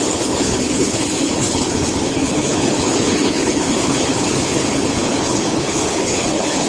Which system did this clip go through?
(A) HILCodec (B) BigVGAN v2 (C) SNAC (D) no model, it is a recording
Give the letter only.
A